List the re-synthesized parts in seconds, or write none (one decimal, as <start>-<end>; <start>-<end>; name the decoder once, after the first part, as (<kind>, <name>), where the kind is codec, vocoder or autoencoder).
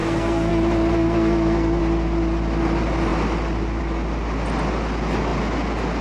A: 0.0-0.5 (codec, SNAC); 0.9-1.8